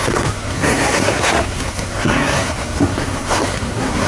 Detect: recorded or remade remade